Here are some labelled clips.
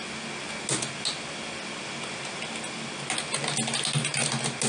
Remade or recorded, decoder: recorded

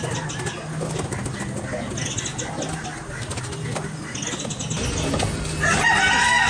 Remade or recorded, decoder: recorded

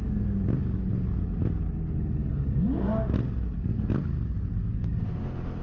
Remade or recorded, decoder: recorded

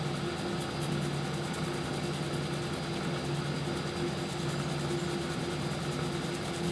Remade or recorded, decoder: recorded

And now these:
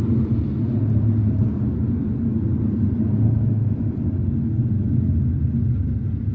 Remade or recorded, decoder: recorded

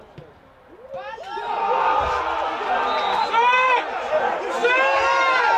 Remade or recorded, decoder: recorded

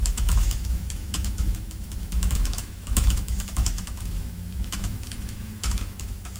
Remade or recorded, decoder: remade, autoencoder, DAC-VAE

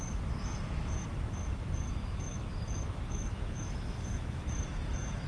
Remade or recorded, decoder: remade, autoencoder, DAC-VAE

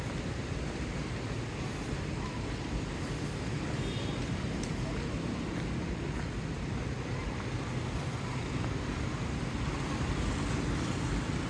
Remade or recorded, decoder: recorded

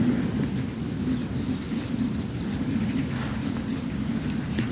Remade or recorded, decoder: recorded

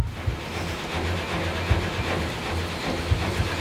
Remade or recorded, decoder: recorded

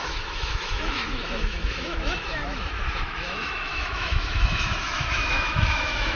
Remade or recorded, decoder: remade, autoencoder, DAC-VAE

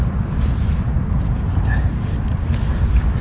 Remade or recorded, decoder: recorded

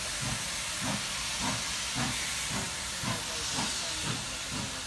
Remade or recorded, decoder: recorded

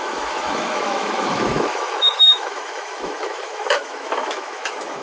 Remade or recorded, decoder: remade, autoencoder, DAC-VAE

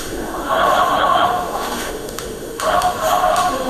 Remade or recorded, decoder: remade, autoencoder, DAC-VAE